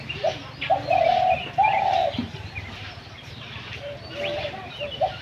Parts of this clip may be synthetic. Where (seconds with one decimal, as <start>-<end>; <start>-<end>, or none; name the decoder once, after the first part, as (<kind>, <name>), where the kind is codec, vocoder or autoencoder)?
1.1-4.2 (vocoder, BigVGAN v2)